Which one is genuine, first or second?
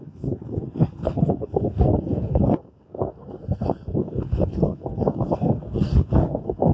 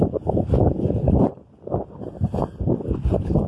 second